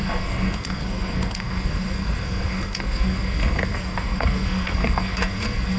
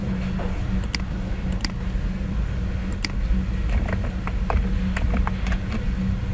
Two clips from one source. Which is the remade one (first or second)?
first